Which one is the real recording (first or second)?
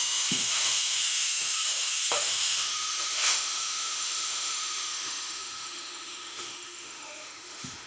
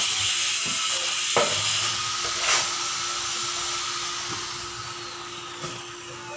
second